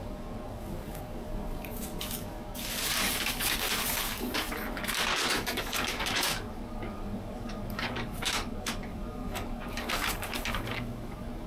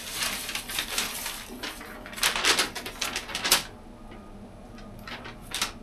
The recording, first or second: second